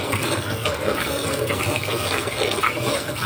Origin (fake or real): fake